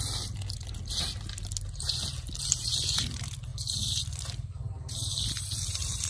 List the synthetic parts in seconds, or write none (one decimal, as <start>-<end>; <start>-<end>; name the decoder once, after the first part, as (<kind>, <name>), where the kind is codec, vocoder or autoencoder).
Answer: none